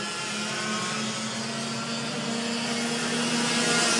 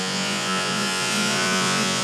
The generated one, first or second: second